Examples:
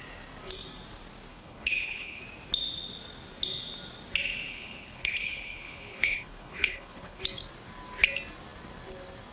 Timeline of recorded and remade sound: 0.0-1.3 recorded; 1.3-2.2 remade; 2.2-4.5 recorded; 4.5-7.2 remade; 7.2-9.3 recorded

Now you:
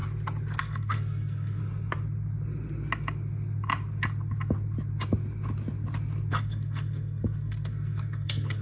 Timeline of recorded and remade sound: 0.0-0.6 recorded; 0.6-1.6 remade; 1.6-6.3 recorded; 6.3-8.6 remade

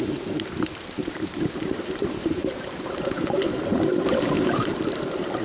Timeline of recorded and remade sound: 0.0-5.4 remade